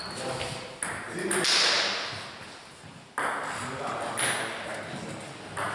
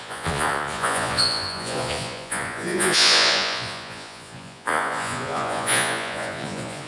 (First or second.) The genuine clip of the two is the first